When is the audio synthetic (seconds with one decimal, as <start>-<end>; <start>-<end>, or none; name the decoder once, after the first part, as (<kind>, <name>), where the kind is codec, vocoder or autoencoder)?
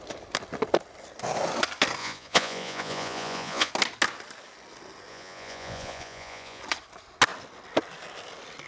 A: 2.0-3.7 (vocoder, Vocos); 5.1-6.6